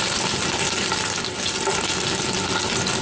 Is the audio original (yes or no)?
yes